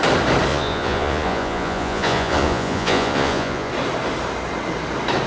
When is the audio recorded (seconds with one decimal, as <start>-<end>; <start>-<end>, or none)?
0.0-0.5; 3.7-5.3